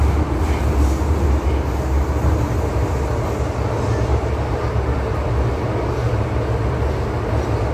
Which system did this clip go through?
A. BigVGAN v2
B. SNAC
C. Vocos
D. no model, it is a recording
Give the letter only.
D